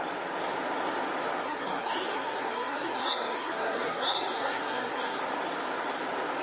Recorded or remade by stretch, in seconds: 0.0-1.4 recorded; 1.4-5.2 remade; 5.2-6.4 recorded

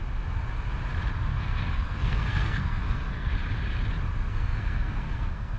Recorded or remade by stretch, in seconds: 0.0-1.3 recorded; 1.3-3.3 remade; 3.3-4.3 recorded; 4.3-5.6 remade

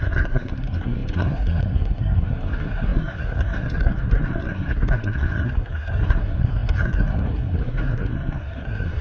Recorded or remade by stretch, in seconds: 0.0-9.0 remade

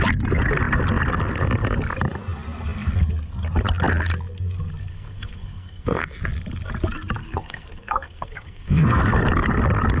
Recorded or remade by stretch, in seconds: 0.0-4.9 recorded; 4.9-6.2 remade; 6.2-7.2 recorded; 7.2-9.0 remade; 9.0-10.0 recorded

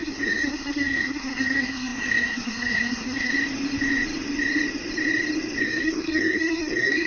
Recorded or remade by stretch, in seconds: 0.0-3.3 remade; 3.3-5.6 recorded; 5.6-7.1 remade

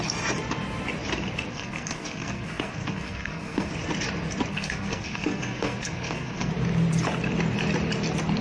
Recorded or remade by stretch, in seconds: 0.0-1.5 recorded; 1.5-3.7 remade; 3.7-4.5 recorded; 4.5-6.5 remade; 6.5-8.4 recorded

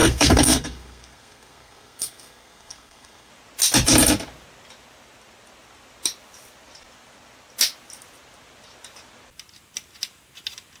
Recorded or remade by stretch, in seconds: 0.0-3.3 remade; 3.3-10.8 recorded

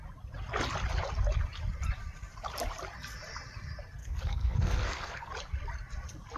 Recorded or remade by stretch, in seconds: 0.0-4.0 recorded; 4.0-5.3 remade; 5.3-6.4 recorded